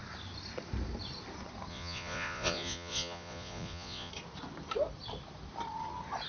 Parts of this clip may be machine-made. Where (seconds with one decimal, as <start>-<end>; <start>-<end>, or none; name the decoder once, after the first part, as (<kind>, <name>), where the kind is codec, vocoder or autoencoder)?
1.7-4.1 (vocoder, Vocos)

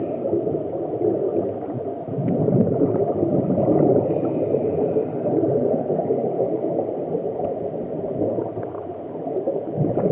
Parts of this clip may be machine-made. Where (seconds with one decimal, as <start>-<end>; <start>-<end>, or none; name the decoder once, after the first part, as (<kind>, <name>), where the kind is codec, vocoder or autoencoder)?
none

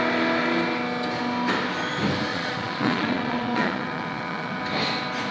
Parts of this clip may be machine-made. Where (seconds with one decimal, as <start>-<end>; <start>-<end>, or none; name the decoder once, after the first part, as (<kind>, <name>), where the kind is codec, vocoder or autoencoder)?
2.3-4.6 (vocoder, Vocos)